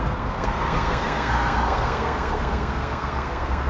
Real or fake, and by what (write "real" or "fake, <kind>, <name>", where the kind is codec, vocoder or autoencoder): fake, codec, SNAC